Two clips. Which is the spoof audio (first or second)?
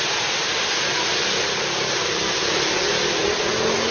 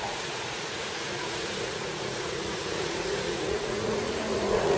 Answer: second